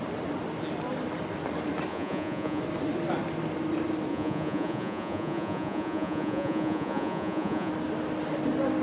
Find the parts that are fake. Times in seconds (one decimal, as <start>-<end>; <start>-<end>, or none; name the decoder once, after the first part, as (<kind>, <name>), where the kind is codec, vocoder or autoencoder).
1.9-2.6 (vocoder, Vocos); 4.1-7.7